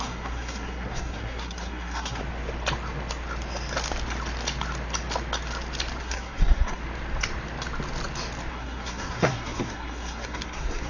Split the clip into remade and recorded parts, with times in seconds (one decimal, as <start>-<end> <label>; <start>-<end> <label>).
0.0-2.2 remade; 2.2-6.0 recorded; 6.0-6.8 remade; 6.8-8.5 recorded; 8.5-10.9 remade